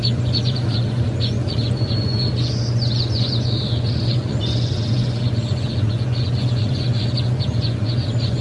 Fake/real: fake